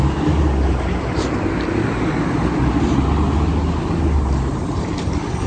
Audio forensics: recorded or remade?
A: recorded